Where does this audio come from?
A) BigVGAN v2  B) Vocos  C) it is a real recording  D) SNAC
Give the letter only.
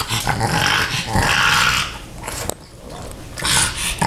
C